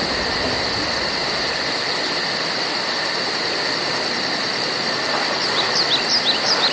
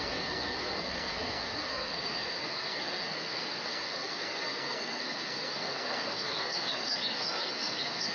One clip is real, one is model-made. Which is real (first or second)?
first